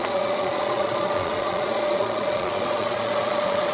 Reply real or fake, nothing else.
fake